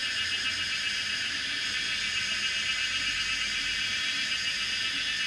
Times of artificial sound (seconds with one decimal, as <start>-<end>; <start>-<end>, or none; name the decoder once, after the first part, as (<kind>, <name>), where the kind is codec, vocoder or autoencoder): none

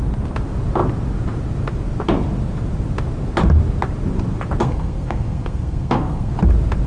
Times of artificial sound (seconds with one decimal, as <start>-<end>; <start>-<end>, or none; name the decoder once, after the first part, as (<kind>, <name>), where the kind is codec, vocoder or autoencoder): 4.6-6.3 (codec, SNAC)

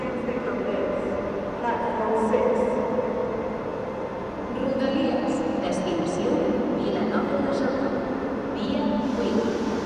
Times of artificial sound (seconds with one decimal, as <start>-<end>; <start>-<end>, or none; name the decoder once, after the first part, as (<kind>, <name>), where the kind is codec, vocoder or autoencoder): none

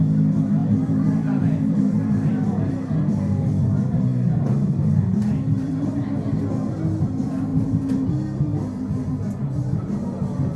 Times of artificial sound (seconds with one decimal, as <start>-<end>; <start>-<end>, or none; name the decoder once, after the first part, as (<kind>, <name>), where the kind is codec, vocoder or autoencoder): 0.6-2.7 (vocoder, BigVGAN v2); 7.5-8.1

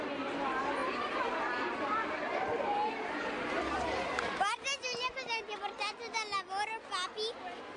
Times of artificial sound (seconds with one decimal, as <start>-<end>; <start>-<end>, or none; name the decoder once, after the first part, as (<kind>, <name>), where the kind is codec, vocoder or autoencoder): none